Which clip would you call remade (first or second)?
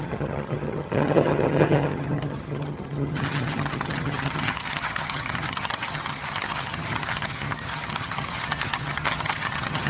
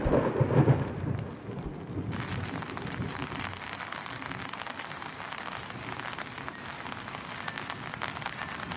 first